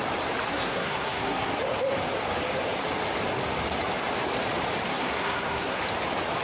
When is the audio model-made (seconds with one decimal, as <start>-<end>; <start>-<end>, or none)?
0.5-1.5; 4.9-5.8